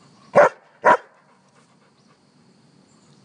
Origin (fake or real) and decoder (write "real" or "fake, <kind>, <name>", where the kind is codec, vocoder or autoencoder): real